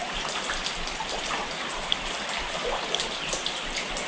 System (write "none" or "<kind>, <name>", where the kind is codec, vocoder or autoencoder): none